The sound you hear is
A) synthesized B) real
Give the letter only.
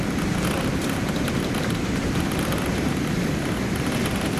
A